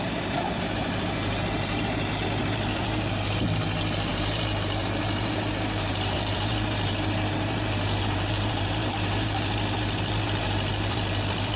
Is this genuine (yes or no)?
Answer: no